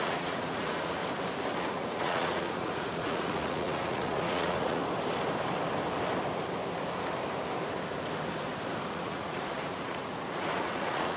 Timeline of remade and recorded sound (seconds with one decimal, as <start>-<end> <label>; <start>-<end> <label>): 0.0-1.0 remade; 1.0-1.6 recorded; 1.6-4.8 remade; 4.8-8.9 recorded; 8.9-11.2 remade